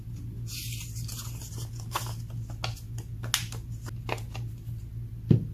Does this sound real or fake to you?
real